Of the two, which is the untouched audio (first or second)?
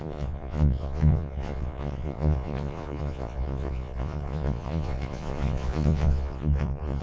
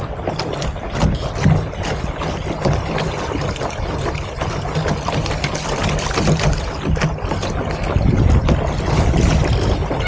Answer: second